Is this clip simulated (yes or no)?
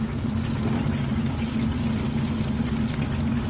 no